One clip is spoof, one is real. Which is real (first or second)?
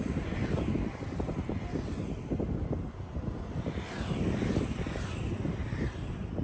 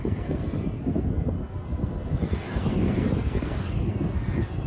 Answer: first